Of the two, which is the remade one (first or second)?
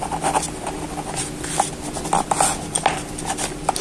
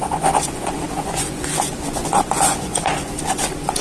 second